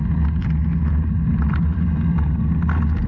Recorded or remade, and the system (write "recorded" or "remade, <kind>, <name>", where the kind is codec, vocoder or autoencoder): recorded